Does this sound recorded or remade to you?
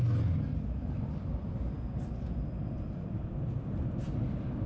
recorded